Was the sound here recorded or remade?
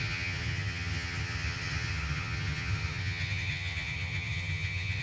remade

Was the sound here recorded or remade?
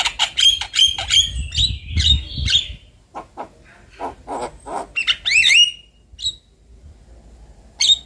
recorded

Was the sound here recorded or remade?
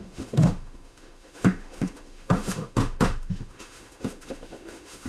remade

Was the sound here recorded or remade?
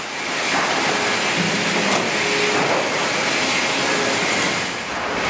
recorded